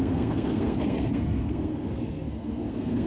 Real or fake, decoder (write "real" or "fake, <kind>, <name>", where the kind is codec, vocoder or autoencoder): fake, codec, SNAC